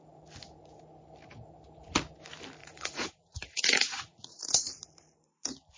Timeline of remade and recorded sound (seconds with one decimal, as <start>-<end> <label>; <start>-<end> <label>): 0.0-2.6 recorded; 2.6-4.7 remade; 4.7-5.8 recorded